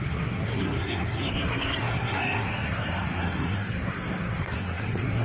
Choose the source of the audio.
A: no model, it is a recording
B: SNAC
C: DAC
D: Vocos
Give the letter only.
B